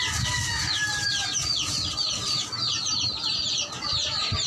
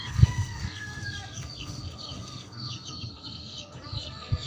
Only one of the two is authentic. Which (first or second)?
first